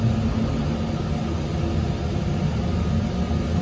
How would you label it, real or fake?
real